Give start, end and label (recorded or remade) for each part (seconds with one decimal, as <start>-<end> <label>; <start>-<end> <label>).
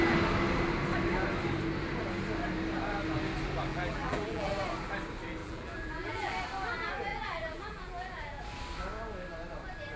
0.0-3.7 recorded; 3.7-4.5 remade; 4.5-5.4 recorded; 5.4-6.3 remade; 6.3-7.1 recorded; 7.1-8.4 remade; 8.4-10.0 recorded